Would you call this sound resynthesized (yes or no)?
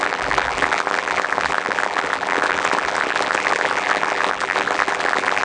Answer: yes